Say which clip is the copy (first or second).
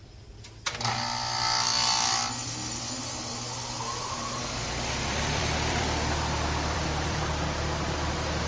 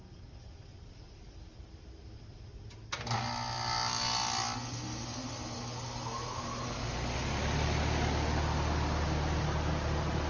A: first